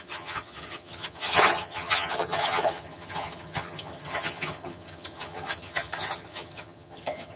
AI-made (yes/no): yes